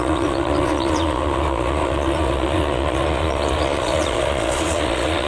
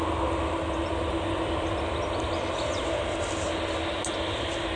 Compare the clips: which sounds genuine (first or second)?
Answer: second